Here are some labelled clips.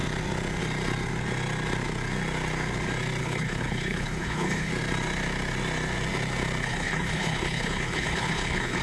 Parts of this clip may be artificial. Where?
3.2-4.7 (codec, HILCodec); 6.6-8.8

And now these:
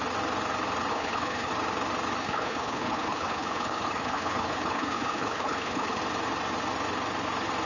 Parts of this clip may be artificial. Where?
0.9-1.5 (codec, HILCodec); 2.2-6.0

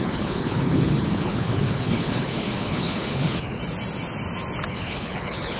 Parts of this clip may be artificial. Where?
0.0-3.6 (codec, HILCodec); 4.7-5.6

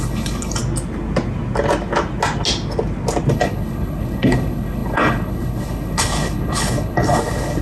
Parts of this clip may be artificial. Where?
0.0-0.6 (codec, HILCodec); 3.3-7.6

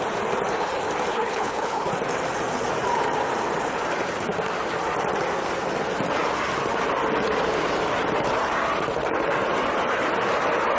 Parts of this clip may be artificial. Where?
1.1-1.9 (codec, HILCodec)

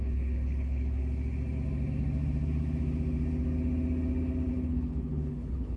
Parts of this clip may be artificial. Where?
0.0-1.0 (codec, HILCodec); 4.5-5.8